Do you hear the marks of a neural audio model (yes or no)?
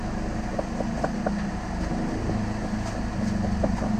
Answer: no